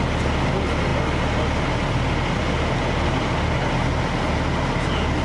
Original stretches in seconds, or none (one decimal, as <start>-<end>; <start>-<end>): 0.0-5.2